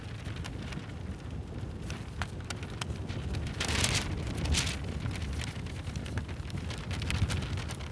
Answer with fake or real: real